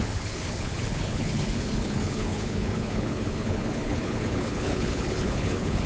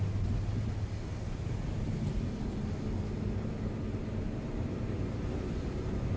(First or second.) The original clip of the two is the second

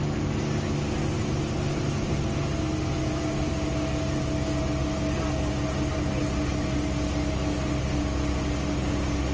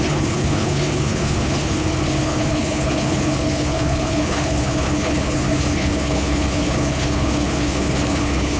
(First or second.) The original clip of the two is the first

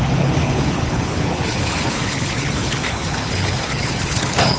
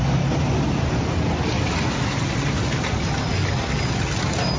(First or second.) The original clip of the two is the second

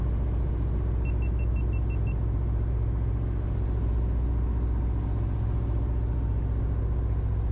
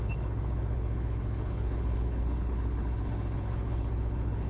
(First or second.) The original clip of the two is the first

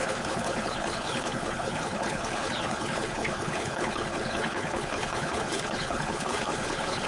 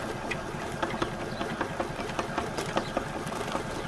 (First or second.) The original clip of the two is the second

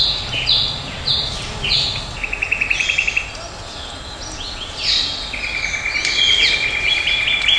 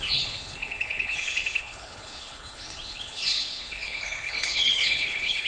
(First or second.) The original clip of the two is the first